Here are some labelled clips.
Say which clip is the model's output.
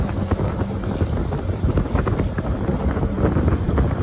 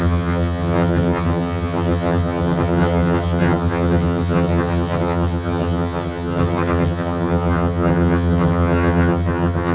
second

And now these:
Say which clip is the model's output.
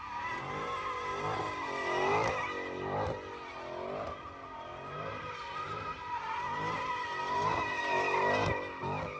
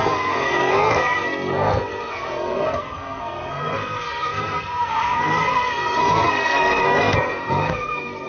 second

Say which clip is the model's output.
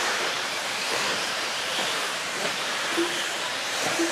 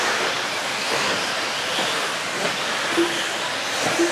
first